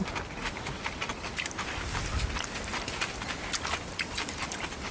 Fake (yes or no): no